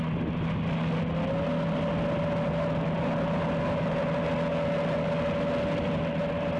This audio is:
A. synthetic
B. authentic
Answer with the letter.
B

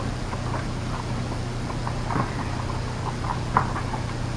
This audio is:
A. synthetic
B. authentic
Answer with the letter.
B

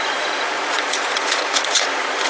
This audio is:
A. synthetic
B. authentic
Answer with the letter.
A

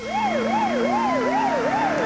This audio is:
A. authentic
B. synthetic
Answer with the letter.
A